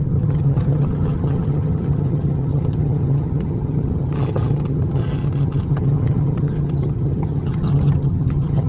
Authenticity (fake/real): fake